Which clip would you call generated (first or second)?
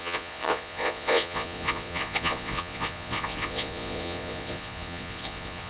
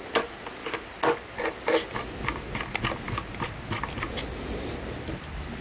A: first